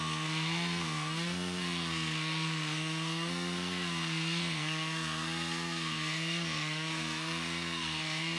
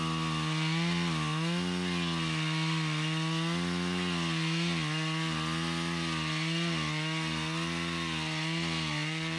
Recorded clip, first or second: second